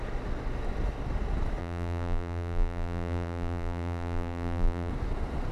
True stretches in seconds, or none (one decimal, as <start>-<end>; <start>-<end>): 0.0-1.6; 4.9-5.5